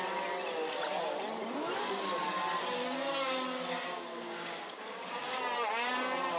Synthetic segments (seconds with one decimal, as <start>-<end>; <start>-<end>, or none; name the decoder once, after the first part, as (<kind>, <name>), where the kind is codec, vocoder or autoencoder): 4.1-5.4 (codec, DAC)